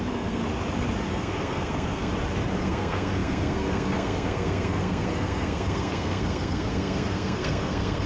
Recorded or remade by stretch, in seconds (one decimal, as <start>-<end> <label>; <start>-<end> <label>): 0.0-0.4 remade; 0.4-1.1 recorded; 1.1-2.1 remade; 2.1-2.6 recorded; 2.6-8.1 remade